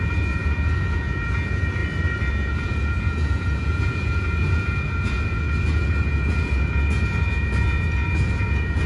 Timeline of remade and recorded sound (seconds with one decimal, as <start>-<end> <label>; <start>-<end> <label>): 0.0-1.8 remade; 1.8-2.3 recorded; 2.3-8.9 remade